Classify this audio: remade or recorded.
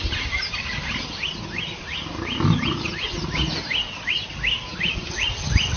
recorded